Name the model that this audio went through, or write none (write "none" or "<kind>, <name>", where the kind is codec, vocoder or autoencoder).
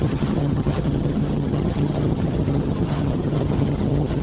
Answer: vocoder, HiFi-GAN